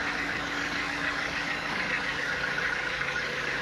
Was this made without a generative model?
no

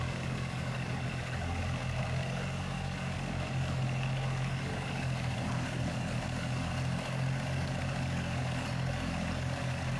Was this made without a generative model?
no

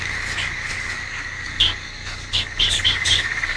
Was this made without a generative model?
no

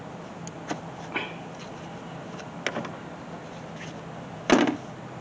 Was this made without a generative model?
yes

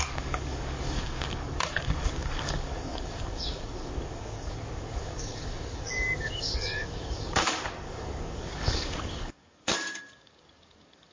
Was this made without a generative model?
no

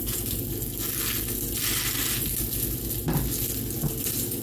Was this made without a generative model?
yes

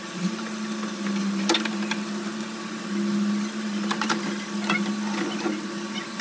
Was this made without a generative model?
yes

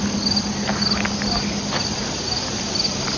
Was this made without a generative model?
yes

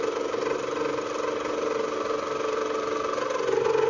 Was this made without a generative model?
yes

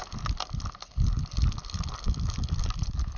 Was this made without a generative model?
yes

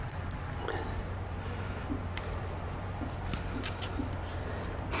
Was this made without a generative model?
yes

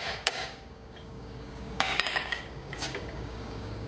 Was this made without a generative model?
no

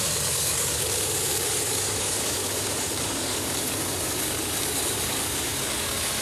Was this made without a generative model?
no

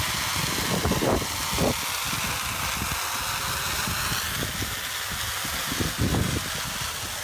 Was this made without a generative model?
yes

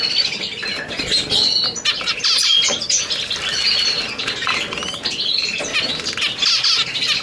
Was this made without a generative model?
yes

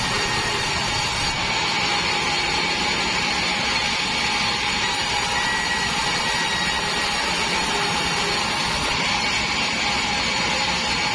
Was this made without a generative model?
yes